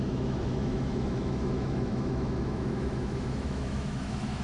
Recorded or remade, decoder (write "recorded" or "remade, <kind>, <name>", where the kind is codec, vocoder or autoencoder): remade, autoencoder, DAC-VAE